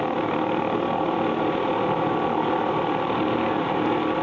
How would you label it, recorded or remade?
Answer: recorded